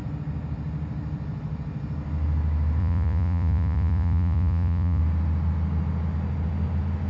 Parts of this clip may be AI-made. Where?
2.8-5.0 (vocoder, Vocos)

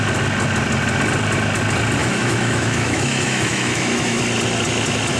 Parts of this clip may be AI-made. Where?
2.0-4.2 (autoencoder, DAC-VAE)

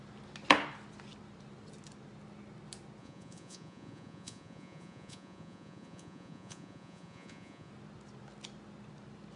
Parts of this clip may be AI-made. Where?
3.0-7.7 (vocoder, Vocos)

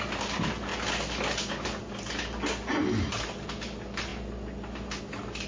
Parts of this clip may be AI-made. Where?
none

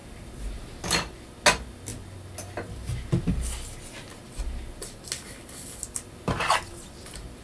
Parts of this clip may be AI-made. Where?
none

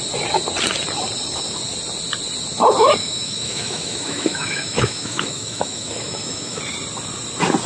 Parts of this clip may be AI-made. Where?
3.0-6.6 (autoencoder, DAC-VAE)

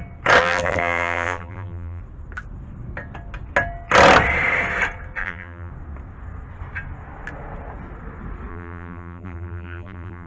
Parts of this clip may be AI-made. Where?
0.4-2.0 (vocoder, BigVGAN v2); 5.2-5.7; 8.5-10.3